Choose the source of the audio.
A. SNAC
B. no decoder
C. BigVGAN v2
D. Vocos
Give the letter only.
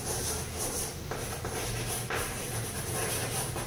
B